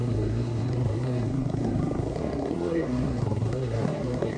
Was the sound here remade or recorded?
remade